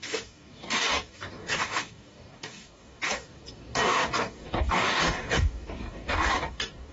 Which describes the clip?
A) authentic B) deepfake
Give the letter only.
B